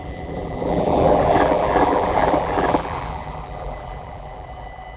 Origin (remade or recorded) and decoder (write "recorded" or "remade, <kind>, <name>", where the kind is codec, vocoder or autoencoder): remade, vocoder, BigVGAN v2